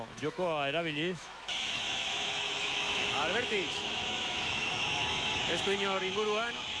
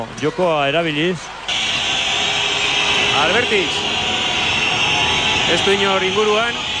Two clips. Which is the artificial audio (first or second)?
first